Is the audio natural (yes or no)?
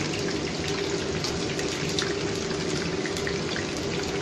yes